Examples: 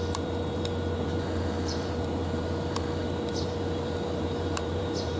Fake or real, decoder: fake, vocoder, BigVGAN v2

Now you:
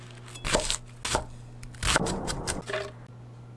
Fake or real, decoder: real